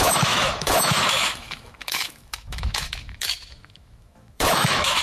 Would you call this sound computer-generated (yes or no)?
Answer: yes